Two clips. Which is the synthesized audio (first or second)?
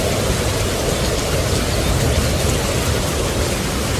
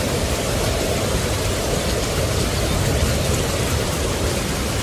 second